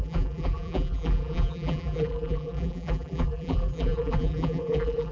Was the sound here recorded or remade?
remade